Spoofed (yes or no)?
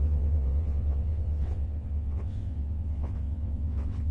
yes